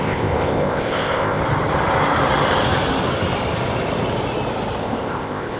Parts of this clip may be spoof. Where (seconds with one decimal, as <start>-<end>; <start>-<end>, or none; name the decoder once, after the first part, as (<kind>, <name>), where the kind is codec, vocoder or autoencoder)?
0.0-1.4 (codec, ZipCodec); 4.8-5.6